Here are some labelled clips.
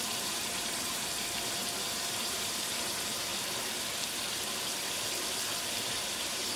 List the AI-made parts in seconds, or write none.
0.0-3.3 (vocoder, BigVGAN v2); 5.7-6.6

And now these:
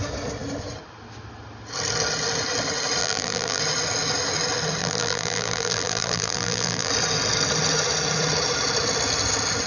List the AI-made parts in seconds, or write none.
3.0-3.6 (vocoder, BigVGAN v2); 4.8-6.9

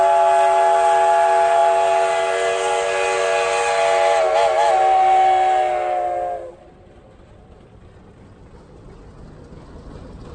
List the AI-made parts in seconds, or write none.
none